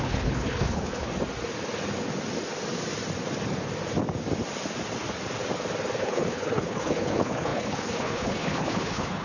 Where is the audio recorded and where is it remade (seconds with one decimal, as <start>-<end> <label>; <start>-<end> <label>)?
0.0-1.1 remade; 1.1-6.0 recorded; 6.0-9.2 remade